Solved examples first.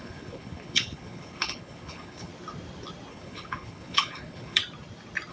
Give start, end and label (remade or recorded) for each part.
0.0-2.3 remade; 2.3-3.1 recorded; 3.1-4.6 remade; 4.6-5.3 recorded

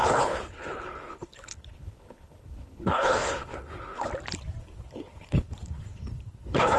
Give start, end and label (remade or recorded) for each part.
0.0-4.1 remade; 4.1-4.6 recorded; 4.6-6.8 remade

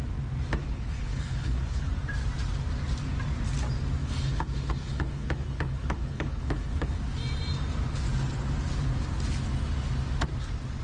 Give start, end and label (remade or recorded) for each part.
0.0-0.6 recorded; 0.6-1.9 remade; 1.9-4.0 recorded; 4.0-7.0 remade; 7.0-10.8 recorded

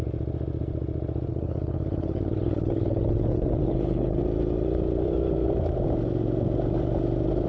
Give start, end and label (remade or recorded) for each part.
0.0-1.3 recorded; 1.3-4.2 remade; 4.2-7.5 recorded